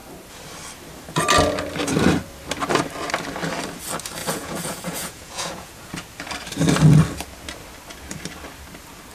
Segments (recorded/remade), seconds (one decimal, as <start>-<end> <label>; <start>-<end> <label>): 0.0-4.2 recorded; 4.2-5.9 remade; 5.9-9.1 recorded